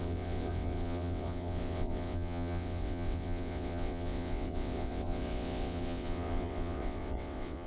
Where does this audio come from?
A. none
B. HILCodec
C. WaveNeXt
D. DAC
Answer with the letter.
C